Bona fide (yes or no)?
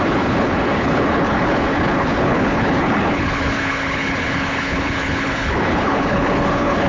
no